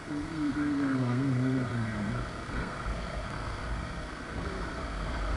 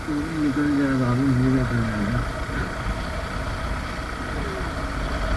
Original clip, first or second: second